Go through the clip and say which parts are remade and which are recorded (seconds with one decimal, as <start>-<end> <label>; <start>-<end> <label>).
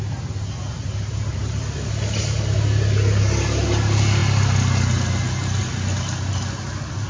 0.0-7.1 recorded